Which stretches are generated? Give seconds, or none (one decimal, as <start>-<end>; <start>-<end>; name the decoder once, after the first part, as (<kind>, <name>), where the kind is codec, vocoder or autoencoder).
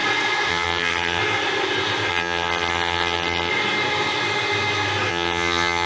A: 0.5-1.2 (vocoder, HiFi-GAN); 2.1-3.5; 5.1-5.9